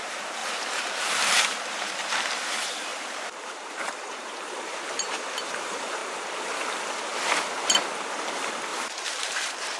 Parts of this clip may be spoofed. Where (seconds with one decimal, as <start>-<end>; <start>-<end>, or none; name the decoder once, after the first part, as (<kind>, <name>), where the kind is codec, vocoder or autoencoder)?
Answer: 0.0-6.0 (vocoder, BigVGAN v2); 7.1-9.8